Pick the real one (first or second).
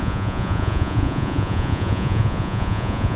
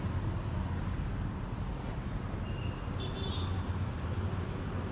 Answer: second